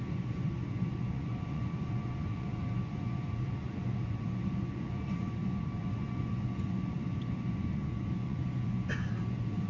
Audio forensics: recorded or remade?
remade